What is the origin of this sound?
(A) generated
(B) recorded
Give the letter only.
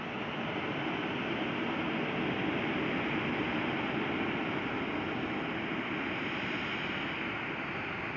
B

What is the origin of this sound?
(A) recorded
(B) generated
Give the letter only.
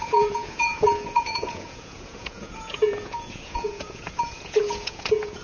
B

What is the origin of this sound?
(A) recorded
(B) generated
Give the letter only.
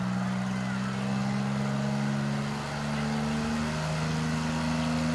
A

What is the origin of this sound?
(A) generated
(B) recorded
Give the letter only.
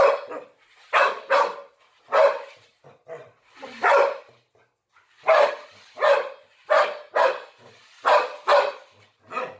B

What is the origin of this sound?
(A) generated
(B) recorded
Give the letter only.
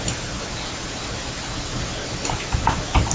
B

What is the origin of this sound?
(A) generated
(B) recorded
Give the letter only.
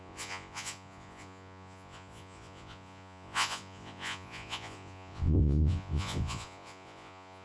A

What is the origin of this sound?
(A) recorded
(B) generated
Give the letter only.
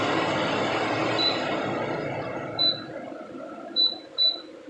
B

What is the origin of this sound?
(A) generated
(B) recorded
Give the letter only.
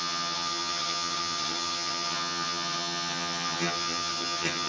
A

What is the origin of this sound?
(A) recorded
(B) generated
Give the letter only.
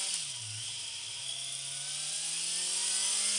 A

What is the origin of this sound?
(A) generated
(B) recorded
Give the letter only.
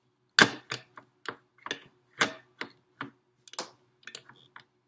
B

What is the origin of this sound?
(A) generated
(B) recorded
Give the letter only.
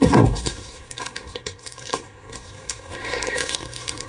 A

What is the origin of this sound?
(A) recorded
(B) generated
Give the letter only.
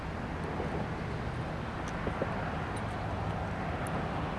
A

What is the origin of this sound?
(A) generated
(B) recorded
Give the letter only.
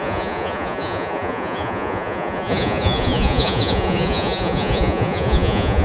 A